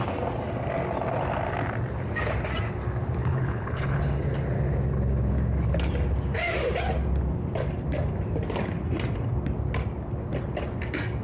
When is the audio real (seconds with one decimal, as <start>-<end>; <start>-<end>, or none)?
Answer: 0.0-3.2; 4.0-11.2